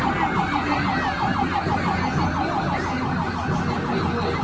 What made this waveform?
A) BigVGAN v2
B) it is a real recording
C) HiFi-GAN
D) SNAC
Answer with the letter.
B